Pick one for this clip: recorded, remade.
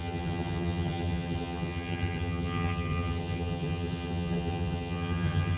remade